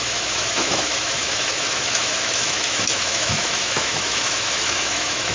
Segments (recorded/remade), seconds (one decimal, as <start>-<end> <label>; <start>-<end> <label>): 0.0-5.3 remade